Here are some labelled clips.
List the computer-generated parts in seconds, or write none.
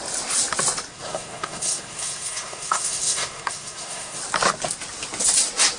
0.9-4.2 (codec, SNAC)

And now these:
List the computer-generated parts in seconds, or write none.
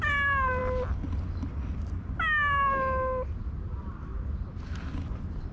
none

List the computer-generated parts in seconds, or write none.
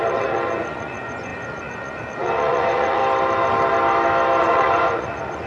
0.0-3.0 (vocoder, Vocos); 4.4-5.5